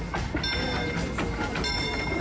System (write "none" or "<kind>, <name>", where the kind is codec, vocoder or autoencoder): none